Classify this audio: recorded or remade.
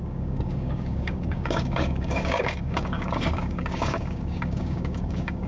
remade